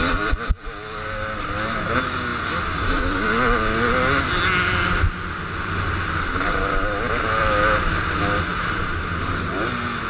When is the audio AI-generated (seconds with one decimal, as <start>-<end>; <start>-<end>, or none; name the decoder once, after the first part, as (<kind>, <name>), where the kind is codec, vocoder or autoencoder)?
8.5-9.3 (vocoder, BigVGAN v2)